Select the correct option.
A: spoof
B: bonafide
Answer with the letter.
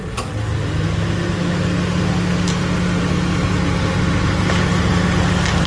B